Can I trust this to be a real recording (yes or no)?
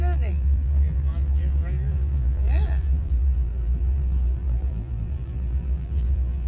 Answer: no